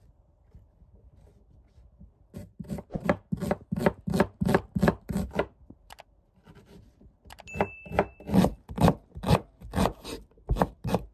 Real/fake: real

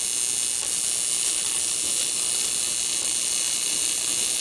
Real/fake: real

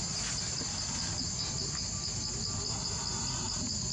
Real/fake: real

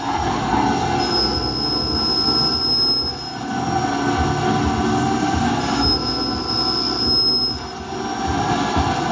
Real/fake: real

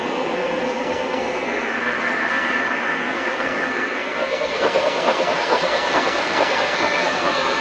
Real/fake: fake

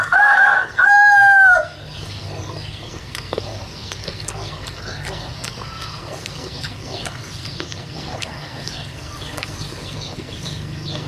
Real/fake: fake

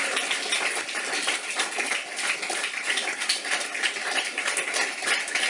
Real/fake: real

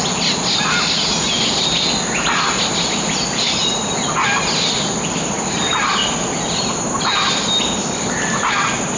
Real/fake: real